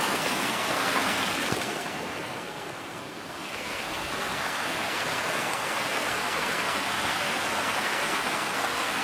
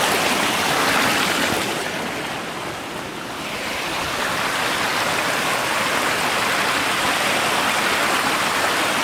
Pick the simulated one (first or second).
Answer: first